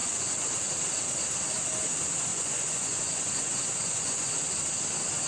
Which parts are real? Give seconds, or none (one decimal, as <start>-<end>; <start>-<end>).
0.5-2.3; 4.5-5.3